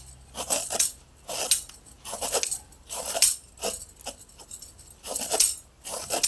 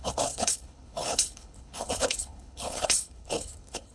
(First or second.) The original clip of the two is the first